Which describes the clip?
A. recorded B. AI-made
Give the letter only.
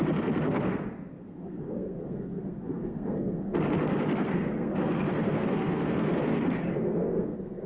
B